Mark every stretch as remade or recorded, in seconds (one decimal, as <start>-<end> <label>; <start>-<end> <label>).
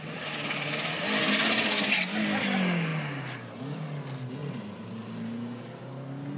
0.0-4.4 recorded; 4.4-5.8 remade; 5.8-6.4 recorded